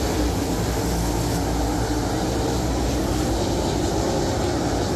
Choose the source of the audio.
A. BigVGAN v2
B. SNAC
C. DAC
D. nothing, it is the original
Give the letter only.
D